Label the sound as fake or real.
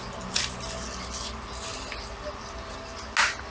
real